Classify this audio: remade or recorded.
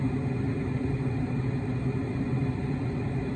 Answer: recorded